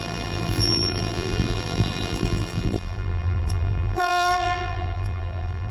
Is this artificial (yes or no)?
yes